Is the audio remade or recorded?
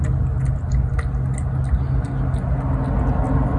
recorded